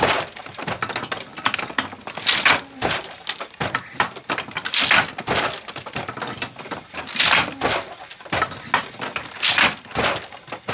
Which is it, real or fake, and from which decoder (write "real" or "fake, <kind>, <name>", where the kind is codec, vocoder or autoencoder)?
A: real